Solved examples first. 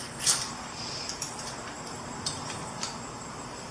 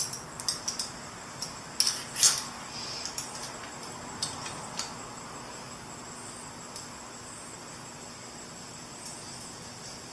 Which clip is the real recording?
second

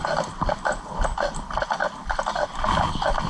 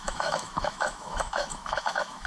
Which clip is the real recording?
first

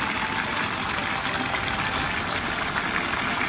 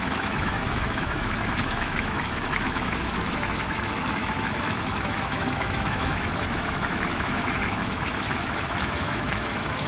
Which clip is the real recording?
first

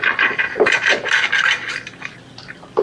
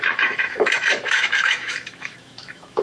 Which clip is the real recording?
first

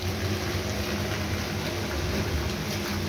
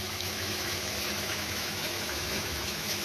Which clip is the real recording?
first